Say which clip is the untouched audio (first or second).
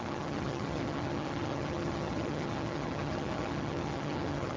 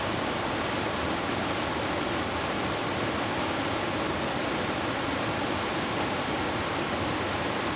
second